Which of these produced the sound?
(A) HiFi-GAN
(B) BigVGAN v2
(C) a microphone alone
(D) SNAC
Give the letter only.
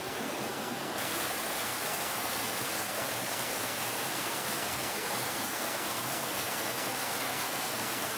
D